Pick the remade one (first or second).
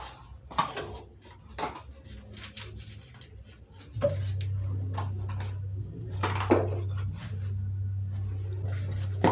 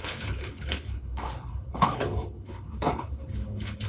second